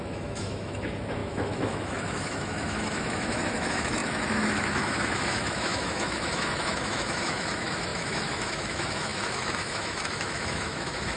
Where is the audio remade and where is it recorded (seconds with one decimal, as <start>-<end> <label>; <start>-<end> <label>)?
0.0-11.2 remade